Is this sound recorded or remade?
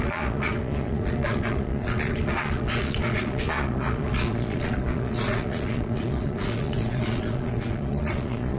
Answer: remade